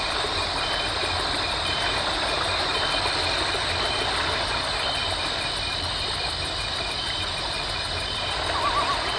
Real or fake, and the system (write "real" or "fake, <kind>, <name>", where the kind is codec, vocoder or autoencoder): real